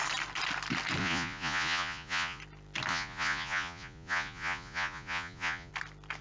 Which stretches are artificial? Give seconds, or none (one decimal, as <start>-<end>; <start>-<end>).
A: 1.0-2.4; 2.9-5.7